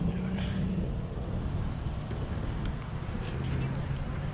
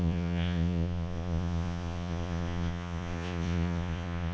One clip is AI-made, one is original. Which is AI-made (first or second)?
second